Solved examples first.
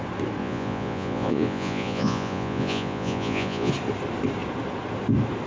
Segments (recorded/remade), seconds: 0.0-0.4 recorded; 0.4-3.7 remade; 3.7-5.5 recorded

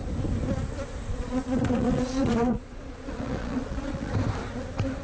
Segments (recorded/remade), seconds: 0.0-1.1 recorded; 1.1-4.1 remade; 4.1-5.0 recorded